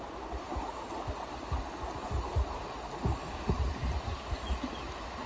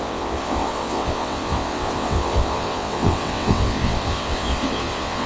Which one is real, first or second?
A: first